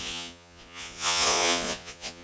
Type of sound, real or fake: fake